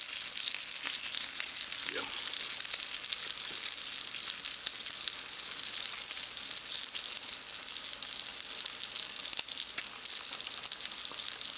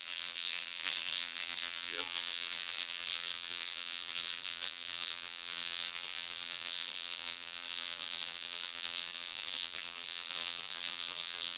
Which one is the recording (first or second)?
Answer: first